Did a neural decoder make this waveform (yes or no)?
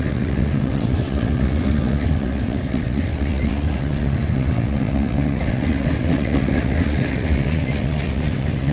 yes